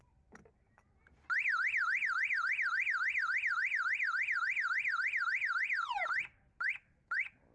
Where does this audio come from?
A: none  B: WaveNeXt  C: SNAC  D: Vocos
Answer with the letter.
A